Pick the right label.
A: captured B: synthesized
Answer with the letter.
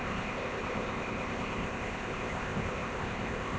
B